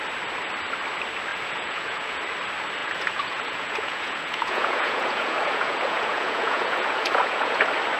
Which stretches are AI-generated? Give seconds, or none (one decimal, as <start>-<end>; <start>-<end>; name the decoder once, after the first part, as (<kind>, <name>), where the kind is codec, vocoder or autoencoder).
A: 1.3-2.2 (vocoder, Vocos); 2.8-7.6